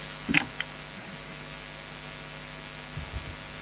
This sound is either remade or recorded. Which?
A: recorded